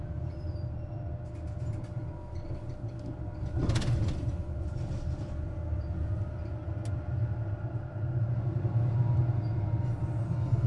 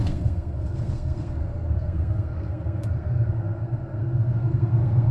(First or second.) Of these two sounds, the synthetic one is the second